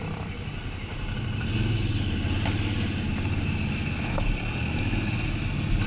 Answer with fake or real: real